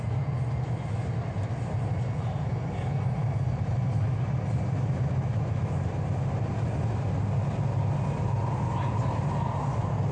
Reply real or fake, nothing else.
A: real